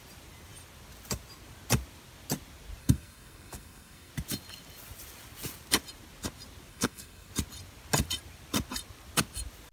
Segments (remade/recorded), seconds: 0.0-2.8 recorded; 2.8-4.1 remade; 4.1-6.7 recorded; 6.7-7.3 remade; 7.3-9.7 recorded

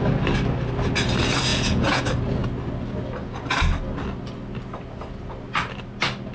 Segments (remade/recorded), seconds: 0.0-1.5 recorded; 1.5-2.0 remade; 2.0-6.3 recorded

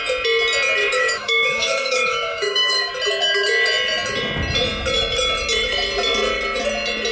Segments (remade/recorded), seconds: 0.0-0.8 recorded; 0.8-2.9 remade; 2.9-7.1 recorded

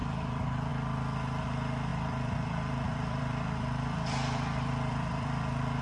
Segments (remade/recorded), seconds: 0.0-0.7 remade; 0.7-1.9 recorded; 1.9-5.8 remade

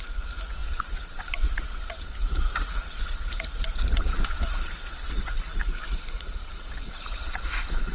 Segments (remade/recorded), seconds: 0.0-7.9 remade

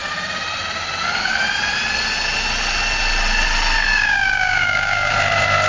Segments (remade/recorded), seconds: 0.0-3.9 recorded; 3.9-5.1 remade; 5.1-5.7 recorded

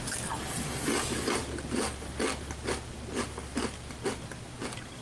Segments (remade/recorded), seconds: 0.0-5.0 recorded

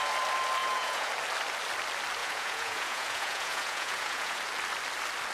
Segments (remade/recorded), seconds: 0.0-0.6 recorded; 0.6-1.1 remade; 1.1-2.2 recorded; 2.2-4.4 remade; 4.4-5.3 recorded